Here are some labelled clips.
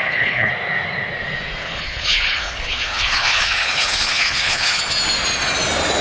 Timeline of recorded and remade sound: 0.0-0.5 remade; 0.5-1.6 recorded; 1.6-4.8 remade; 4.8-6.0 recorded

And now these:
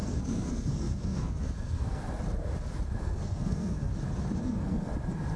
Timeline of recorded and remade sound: 0.0-2.0 remade; 2.0-3.0 recorded; 3.0-3.9 remade; 3.9-4.4 recorded; 4.4-4.9 remade; 4.9-5.4 recorded

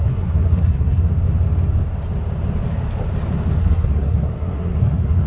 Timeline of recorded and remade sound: 0.0-1.1 remade; 1.1-3.6 recorded; 3.6-5.3 remade